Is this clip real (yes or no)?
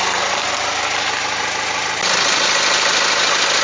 yes